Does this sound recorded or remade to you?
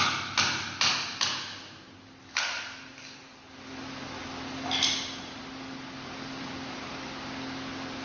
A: recorded